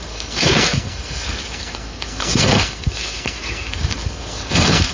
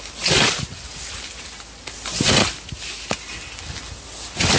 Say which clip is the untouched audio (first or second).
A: second